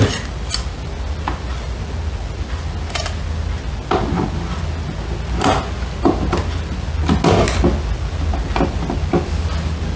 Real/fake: real